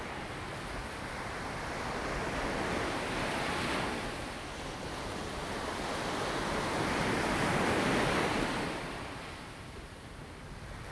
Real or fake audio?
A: real